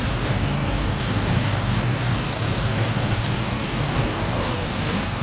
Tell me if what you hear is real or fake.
fake